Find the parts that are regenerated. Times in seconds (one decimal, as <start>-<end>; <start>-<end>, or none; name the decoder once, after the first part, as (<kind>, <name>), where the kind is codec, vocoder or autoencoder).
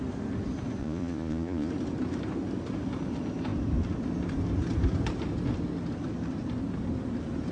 0.8-1.7 (vocoder, Vocos)